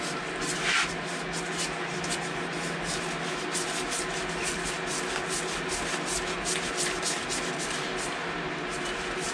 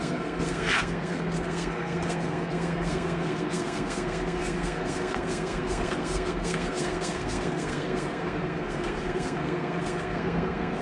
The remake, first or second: second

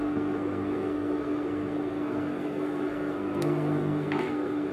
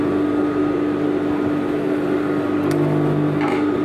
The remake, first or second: first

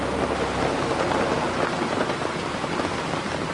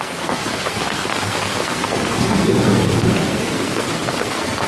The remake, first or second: second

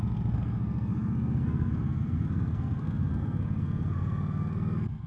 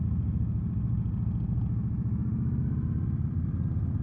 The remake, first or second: first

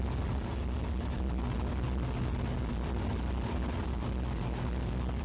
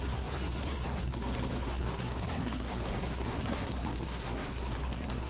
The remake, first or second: second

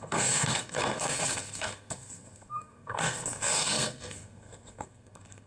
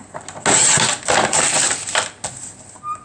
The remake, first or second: first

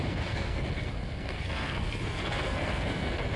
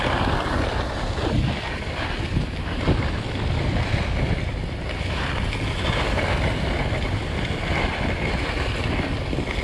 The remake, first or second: first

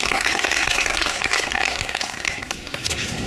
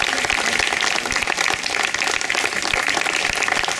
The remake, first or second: first